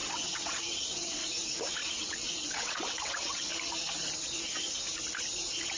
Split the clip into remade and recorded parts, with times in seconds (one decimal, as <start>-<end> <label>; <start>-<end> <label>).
0.0-1.2 remade; 1.2-1.8 recorded; 1.8-3.5 remade; 3.5-5.8 recorded